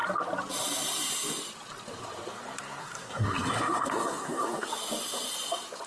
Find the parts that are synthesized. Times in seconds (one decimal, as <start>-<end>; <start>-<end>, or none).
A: 2.8-4.7